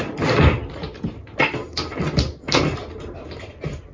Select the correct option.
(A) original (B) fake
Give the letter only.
A